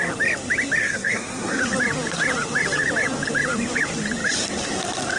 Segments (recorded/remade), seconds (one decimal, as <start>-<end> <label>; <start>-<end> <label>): 0.0-0.8 recorded; 0.8-1.6 remade; 1.6-5.2 recorded